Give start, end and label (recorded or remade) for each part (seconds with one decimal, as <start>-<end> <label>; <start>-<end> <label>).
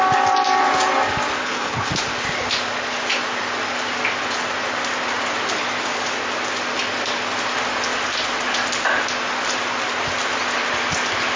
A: 0.0-1.4 recorded; 1.4-1.9 remade; 1.9-11.4 recorded